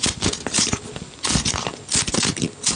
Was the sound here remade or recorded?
recorded